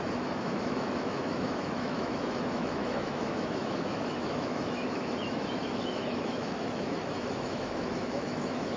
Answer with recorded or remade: remade